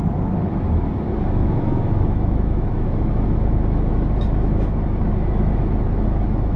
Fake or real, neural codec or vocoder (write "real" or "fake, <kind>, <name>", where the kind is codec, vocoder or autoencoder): fake, autoencoder, DAC-VAE